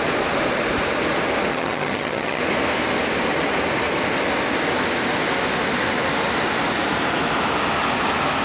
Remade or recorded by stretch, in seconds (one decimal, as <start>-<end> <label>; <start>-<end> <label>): 0.0-1.5 recorded; 1.5-2.4 remade; 2.4-8.4 recorded